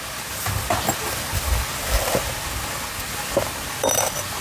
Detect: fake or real real